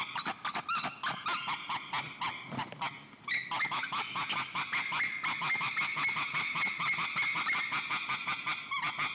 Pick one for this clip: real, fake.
real